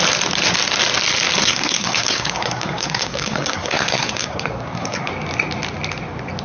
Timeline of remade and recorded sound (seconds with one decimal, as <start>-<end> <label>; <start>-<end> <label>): 0.0-1.4 recorded; 1.4-5.1 remade; 5.1-6.4 recorded